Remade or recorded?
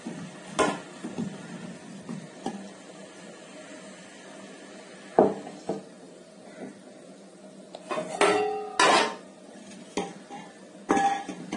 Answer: recorded